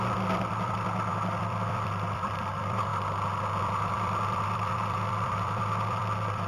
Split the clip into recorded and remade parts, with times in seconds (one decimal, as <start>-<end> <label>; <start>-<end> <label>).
0.0-2.9 remade; 2.9-3.6 recorded; 3.6-6.5 remade